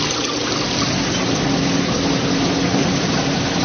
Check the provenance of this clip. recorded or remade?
recorded